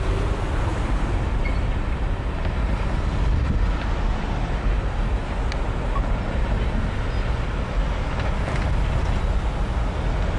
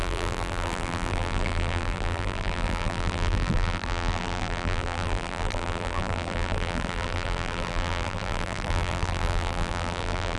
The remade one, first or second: second